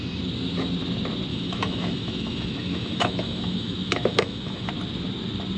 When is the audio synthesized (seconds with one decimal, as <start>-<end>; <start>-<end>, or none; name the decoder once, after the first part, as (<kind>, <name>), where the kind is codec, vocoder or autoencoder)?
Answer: 1.3-4.7 (autoencoder, DAC-VAE)